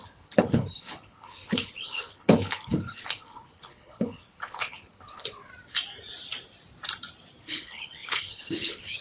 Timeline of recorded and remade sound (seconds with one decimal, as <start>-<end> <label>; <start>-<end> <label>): 0.0-5.5 remade; 5.5-7.4 recorded; 7.4-9.0 remade